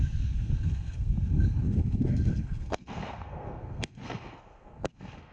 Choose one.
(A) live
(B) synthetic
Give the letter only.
B